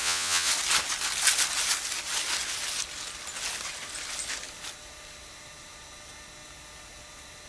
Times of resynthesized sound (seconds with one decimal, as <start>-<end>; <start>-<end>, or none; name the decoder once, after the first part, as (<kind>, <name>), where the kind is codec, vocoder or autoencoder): 0.0-0.5 (vocoder, Vocos)